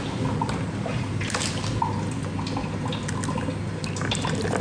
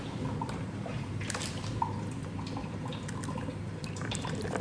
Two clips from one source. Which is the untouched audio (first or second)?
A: first